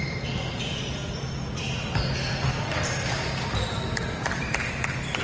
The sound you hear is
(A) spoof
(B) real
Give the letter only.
B